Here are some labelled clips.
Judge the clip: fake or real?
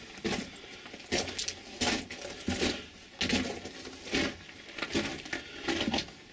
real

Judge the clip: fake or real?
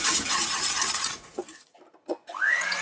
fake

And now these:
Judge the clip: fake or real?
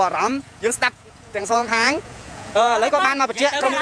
fake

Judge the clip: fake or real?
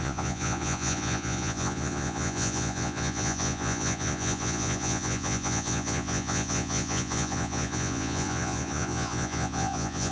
fake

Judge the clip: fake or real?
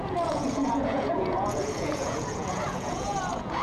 fake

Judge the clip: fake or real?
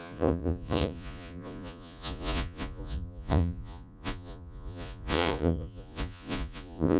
fake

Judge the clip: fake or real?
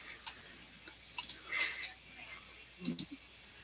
real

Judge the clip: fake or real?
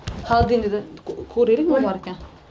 real